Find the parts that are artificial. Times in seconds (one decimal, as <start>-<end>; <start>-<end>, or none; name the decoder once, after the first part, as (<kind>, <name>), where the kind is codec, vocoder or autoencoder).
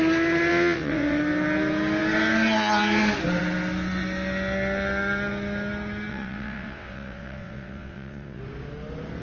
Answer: 0.5-1.2 (vocoder, WaveNeXt); 6.1-8.4